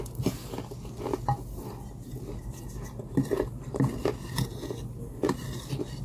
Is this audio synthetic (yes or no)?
no